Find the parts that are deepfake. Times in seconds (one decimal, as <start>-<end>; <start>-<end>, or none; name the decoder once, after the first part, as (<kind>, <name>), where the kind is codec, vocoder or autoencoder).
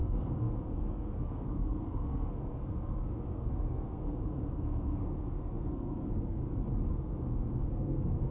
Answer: 0.0-6.4 (codec, SNAC); 6.9-8.3